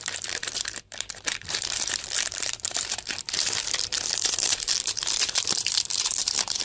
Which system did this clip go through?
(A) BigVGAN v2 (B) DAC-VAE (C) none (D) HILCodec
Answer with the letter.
A